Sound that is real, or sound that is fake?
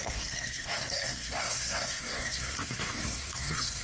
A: fake